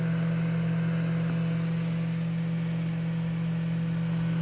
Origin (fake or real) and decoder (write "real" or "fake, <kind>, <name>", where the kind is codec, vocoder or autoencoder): real